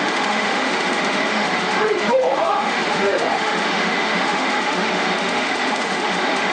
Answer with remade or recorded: remade